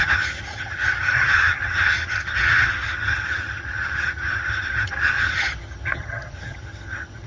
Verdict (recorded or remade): remade